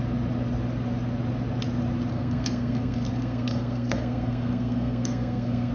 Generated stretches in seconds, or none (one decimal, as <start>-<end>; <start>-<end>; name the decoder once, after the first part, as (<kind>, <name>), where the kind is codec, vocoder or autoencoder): 2.1-5.7 (codec, SNAC)